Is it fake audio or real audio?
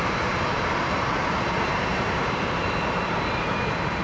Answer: fake